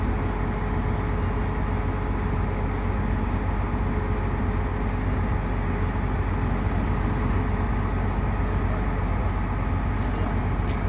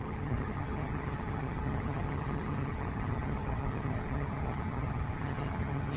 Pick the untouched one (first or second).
first